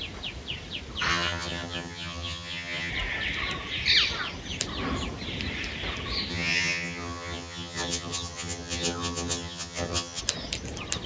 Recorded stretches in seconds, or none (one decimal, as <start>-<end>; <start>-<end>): 0.0-1.1; 2.9-6.3; 10.2-11.1